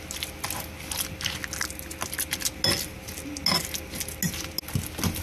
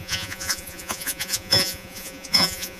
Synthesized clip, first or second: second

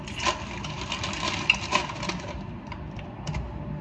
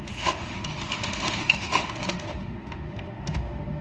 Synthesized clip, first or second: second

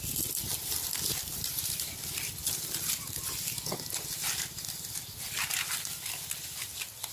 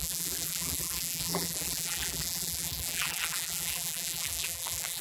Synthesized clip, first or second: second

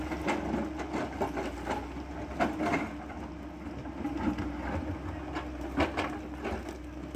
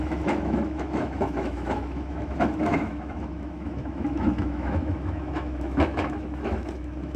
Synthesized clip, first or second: second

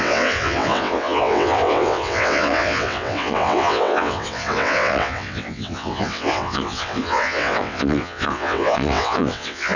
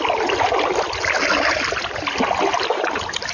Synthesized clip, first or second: first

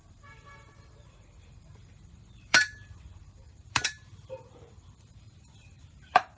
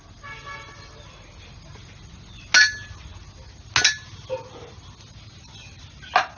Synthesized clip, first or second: first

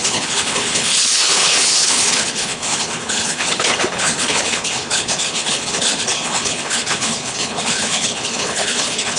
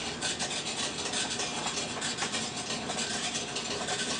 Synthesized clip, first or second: first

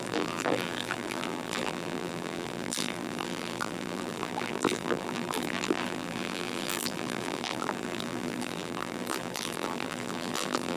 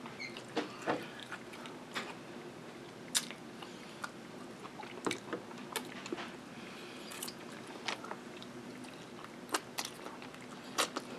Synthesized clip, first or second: first